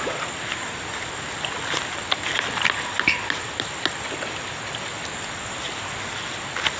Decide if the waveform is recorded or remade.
recorded